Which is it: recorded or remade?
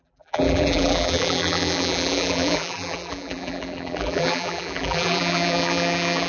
remade